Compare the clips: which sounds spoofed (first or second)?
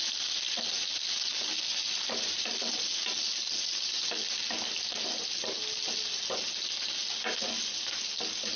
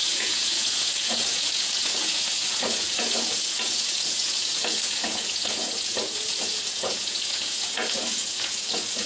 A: second